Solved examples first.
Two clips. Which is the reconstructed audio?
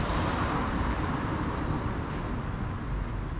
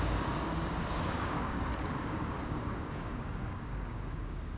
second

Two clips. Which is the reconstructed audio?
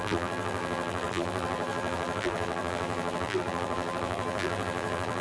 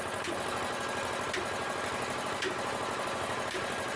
first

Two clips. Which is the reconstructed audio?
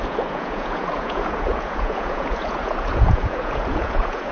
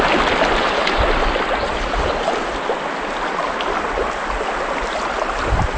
first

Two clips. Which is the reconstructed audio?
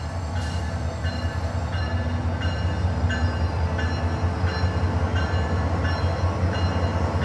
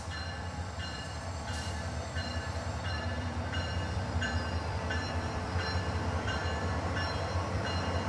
second